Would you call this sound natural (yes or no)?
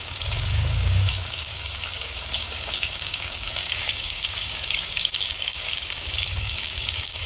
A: no